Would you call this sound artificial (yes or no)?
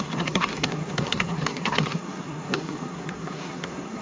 yes